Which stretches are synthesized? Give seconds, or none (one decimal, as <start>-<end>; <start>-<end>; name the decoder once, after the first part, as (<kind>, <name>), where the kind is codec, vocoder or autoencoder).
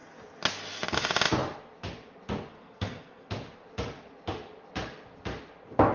2.5-3.3 (codec, SNAC)